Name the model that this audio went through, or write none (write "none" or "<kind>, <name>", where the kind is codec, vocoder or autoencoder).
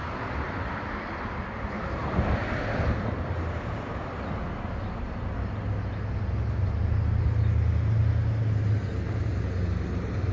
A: none